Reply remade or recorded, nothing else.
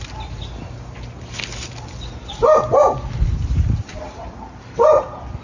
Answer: recorded